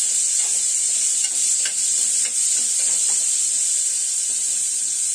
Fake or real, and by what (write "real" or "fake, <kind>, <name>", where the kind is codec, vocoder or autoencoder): real